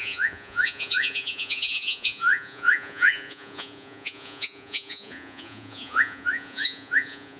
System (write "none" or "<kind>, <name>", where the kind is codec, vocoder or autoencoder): vocoder, Vocos